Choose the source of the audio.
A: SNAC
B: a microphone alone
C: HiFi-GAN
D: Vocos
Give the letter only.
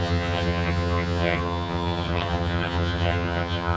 C